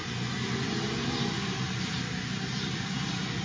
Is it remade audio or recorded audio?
recorded